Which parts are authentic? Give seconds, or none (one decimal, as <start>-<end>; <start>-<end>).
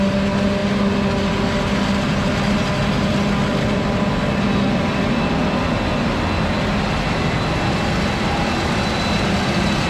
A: 0.0-9.9